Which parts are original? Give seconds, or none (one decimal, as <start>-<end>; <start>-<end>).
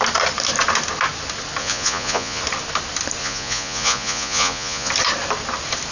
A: 0.0-1.6; 2.4-3.2; 4.9-5.9